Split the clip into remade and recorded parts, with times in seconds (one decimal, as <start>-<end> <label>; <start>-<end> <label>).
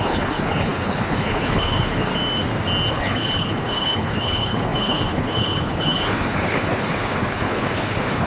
0.0-2.1 remade; 2.1-2.9 recorded; 2.9-8.3 remade